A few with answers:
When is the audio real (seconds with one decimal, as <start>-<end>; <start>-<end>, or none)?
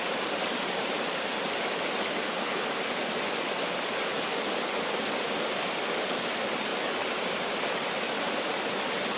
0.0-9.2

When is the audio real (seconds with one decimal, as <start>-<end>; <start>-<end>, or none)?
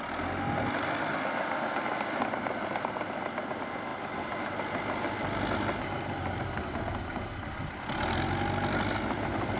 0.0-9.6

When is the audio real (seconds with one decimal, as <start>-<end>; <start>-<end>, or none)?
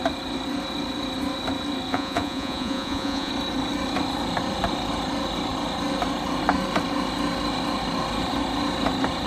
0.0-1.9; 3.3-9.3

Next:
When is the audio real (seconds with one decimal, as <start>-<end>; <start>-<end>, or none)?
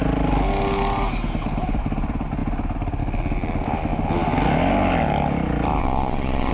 0.0-5.8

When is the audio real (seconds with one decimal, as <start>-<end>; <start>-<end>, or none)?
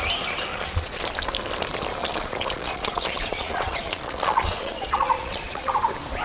0.0-0.5; 1.0-2.0; 5.7-6.2